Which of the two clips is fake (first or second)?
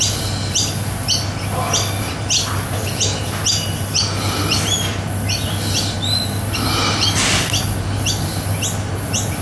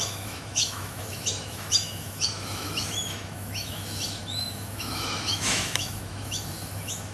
second